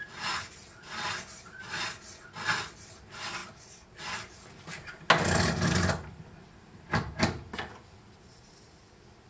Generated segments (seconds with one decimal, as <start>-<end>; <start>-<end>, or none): none